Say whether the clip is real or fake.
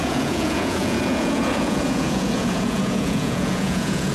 fake